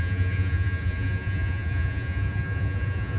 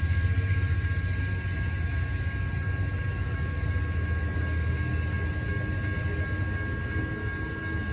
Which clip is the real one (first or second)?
second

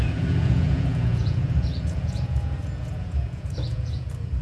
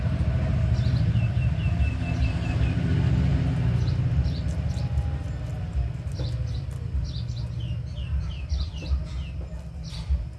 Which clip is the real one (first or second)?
second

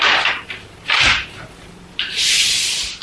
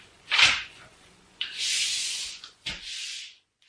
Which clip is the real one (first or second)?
first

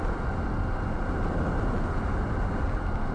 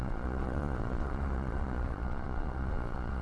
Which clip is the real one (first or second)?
first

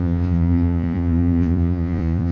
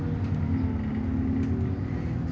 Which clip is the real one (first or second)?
second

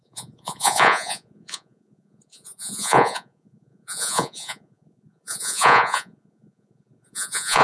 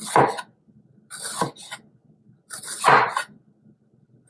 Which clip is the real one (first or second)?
second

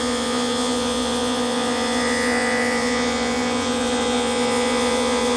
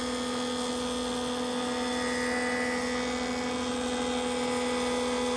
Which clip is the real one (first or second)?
second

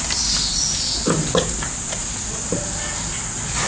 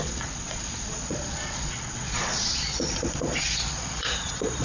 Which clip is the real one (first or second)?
first